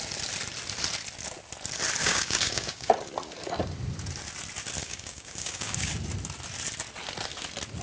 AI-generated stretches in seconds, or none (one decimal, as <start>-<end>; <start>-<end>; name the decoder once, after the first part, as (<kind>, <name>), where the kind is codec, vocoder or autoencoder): 2.0-2.9 (codec, DAC); 4.8-5.9